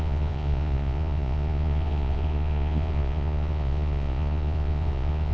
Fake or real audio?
fake